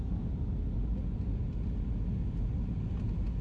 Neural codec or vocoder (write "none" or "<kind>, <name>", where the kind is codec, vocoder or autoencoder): none